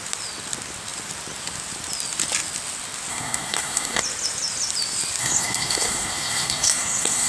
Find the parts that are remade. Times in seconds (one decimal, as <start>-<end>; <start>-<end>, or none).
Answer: 3.1-4.0; 5.2-7.3